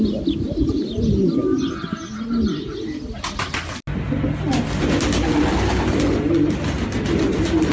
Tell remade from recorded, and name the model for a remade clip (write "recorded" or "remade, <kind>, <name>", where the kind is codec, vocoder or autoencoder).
recorded